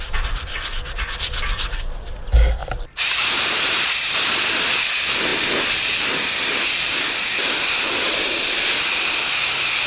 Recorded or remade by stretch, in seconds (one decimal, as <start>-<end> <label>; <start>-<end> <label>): 0.0-2.6 recorded; 2.6-3.8 remade; 3.8-9.9 recorded